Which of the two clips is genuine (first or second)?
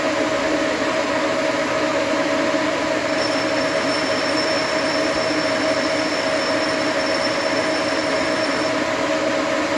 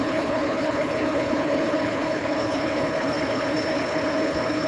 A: first